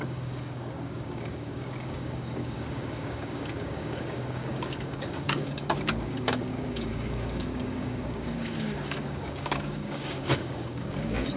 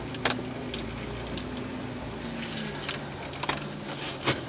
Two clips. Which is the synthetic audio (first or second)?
first